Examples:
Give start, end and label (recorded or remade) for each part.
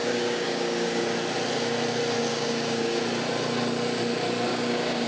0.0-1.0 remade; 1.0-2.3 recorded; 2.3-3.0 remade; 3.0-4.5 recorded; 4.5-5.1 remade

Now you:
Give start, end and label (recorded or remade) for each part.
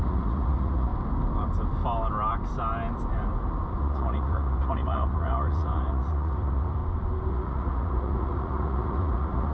0.0-0.9 remade; 0.9-3.8 recorded; 3.8-6.8 remade; 6.8-7.3 recorded; 7.3-9.5 remade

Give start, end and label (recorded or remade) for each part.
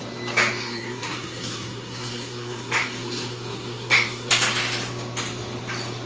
0.0-0.6 recorded; 0.6-4.3 remade; 4.3-6.1 recorded